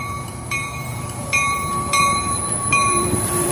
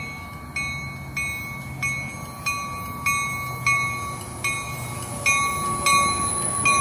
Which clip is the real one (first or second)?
second